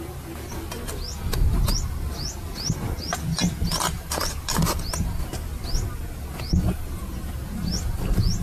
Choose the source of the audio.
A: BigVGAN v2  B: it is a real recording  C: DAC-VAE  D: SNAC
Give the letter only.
B